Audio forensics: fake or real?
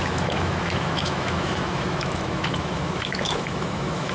fake